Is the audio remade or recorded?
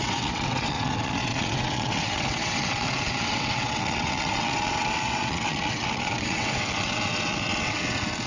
remade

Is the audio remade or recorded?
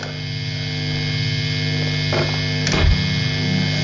recorded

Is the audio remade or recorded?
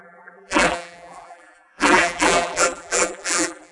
remade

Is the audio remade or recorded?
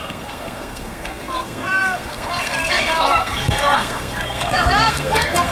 remade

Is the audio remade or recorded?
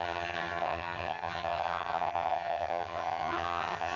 remade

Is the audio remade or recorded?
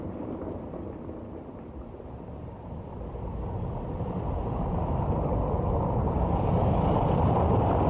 recorded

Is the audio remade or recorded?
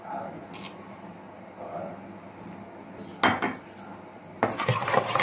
recorded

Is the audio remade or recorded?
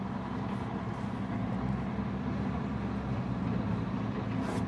recorded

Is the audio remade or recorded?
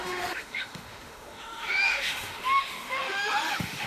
remade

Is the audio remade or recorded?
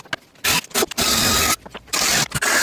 recorded